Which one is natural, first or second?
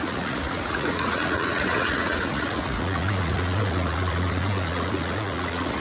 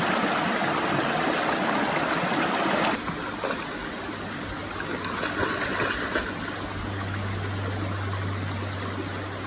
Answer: second